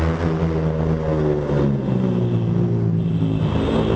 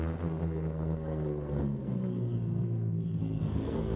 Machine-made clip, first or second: second